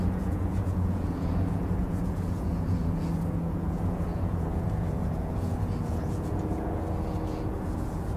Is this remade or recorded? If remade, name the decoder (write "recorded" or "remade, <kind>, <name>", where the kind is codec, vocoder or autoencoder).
remade, vocoder, Vocos